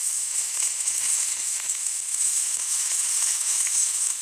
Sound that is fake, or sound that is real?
fake